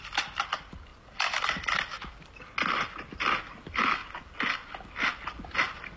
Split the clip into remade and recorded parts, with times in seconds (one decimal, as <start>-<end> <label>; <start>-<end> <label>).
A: 0.0-6.0 recorded